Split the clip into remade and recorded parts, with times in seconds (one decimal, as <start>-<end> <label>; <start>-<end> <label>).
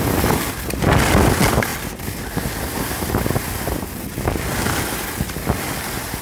0.0-6.2 recorded